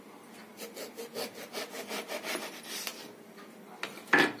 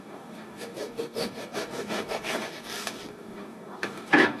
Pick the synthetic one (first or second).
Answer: second